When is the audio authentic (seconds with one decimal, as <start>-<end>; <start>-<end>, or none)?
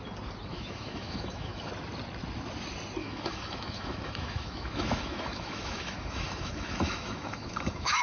0.0-0.5; 1.7-3.0